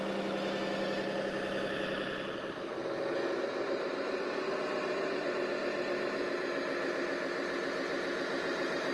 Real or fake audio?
real